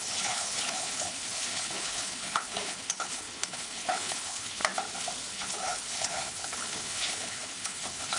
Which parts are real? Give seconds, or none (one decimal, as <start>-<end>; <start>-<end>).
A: 4.6-5.3